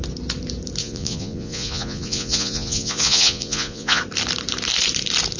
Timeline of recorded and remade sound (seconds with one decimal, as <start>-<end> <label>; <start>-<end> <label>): 0.0-0.8 recorded; 0.8-4.0 remade; 4.0-5.4 recorded